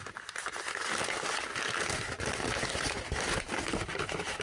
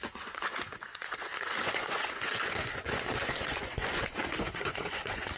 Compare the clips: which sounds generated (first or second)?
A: second